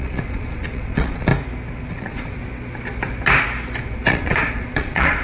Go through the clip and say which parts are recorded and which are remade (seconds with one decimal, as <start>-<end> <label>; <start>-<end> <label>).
0.0-1.3 remade; 1.3-1.9 recorded; 1.9-2.4 remade; 2.4-3.8 recorded; 3.8-5.2 remade